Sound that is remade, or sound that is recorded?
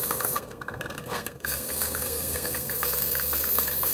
remade